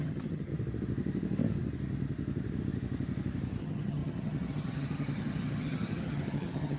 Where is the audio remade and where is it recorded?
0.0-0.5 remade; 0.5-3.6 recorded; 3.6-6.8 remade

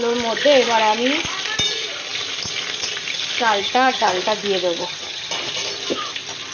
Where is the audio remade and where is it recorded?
0.0-3.6 recorded; 3.6-4.1 remade; 4.1-4.8 recorded; 4.8-5.3 remade; 5.3-6.5 recorded